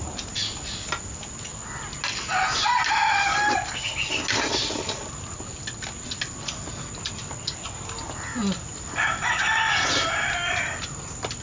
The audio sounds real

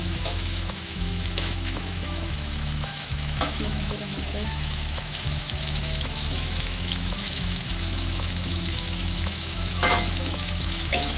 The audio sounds fake